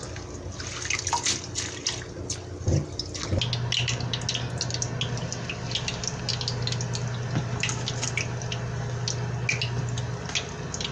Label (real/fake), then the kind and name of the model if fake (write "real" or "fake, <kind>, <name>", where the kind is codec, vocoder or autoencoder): real